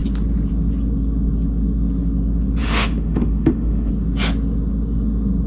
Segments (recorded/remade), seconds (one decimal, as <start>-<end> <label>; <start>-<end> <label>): 0.0-2.6 recorded; 2.6-3.9 remade; 3.9-5.5 recorded